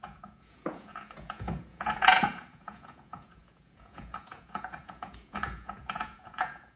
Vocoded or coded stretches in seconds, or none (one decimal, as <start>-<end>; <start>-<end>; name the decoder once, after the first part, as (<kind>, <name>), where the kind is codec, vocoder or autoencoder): 0.0-6.8 (vocoder, Vocos)